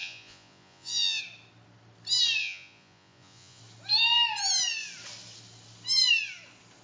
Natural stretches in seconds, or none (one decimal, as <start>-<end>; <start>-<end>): 1.2-2.4; 3.6-6.8